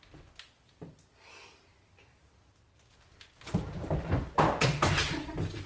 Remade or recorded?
recorded